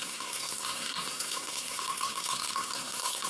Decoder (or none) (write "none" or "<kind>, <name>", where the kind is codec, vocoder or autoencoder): codec, SNAC